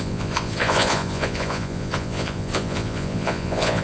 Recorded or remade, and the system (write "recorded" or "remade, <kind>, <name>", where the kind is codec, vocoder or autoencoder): remade, vocoder, Vocos